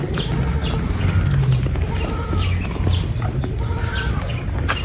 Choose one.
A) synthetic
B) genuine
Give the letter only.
B